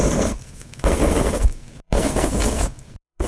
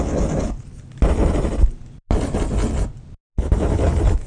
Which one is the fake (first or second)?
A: first